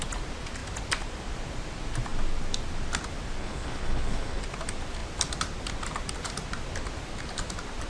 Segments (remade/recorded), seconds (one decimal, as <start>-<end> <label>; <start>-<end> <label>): 0.0-3.4 recorded; 3.4-4.4 remade; 4.4-7.9 recorded